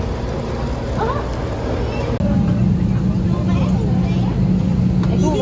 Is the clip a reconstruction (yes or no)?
no